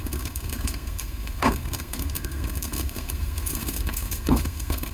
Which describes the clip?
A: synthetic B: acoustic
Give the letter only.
A